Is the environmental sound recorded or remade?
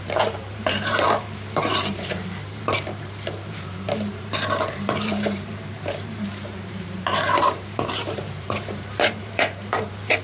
remade